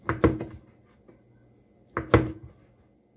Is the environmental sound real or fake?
real